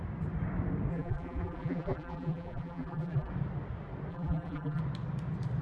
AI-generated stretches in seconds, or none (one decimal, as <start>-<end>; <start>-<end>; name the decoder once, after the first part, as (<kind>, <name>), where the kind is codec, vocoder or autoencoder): 0.9-3.3 (vocoder, BigVGAN v2); 4.1-4.8